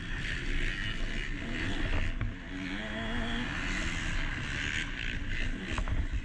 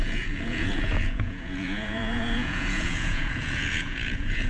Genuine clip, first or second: first